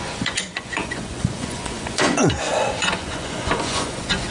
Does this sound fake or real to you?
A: fake